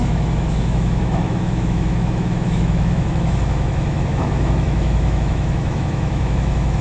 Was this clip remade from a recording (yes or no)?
yes